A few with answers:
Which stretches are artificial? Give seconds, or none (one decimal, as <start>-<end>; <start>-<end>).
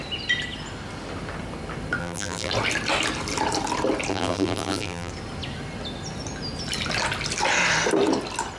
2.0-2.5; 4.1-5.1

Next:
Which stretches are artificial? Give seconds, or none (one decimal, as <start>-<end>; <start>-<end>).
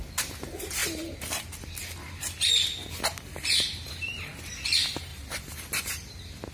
5.1-5.9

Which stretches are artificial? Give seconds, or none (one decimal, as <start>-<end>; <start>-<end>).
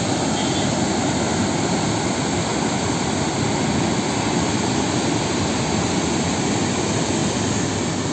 none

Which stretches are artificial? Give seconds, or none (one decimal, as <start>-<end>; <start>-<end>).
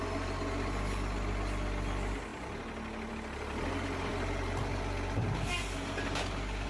none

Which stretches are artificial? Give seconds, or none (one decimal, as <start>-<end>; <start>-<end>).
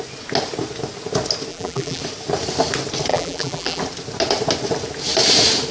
1.5-2.0; 3.1-3.8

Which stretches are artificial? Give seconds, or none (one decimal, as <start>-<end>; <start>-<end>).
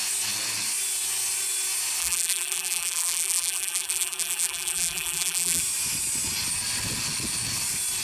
2.0-5.6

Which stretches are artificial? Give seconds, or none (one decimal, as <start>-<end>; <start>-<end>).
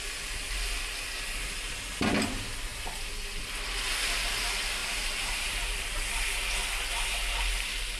2.7-3.4; 4.8-6.0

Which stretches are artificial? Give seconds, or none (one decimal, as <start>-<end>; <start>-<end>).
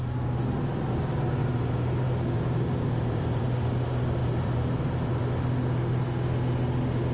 1.4-3.4; 4.2-5.2